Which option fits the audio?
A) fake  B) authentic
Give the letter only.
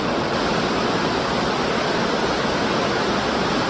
B